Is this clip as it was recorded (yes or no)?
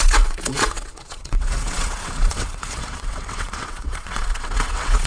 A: no